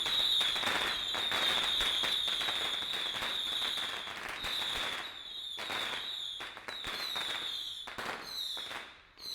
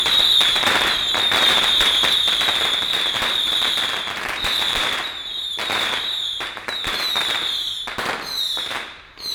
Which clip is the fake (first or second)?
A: second